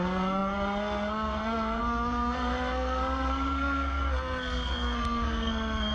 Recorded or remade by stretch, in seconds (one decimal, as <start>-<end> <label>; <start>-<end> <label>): 0.0-5.9 remade